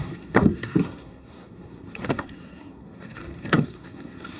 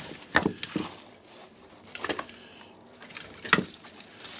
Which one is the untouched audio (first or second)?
second